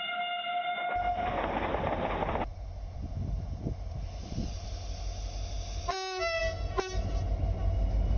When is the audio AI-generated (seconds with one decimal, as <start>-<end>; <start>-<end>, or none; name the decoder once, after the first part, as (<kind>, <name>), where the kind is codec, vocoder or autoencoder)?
none